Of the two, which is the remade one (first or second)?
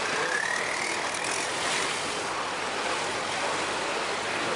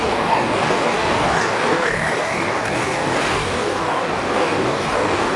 second